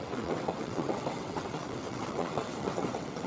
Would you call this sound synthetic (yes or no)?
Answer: yes